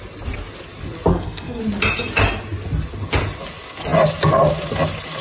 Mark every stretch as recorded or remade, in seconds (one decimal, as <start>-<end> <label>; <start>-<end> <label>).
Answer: 0.0-1.1 recorded; 1.1-1.6 remade; 1.6-5.2 recorded